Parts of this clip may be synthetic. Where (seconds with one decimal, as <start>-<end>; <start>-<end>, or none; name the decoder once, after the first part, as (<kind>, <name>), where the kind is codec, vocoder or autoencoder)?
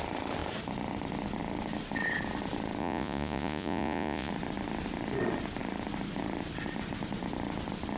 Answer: 2.8-4.3 (vocoder, Vocos)